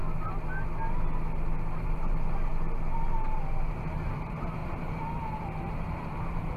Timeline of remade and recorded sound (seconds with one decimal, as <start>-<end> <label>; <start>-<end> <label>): 0.0-1.8 recorded; 1.8-2.5 remade; 2.5-3.7 recorded; 3.7-6.6 remade